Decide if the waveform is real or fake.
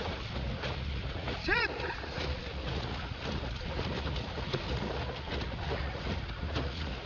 fake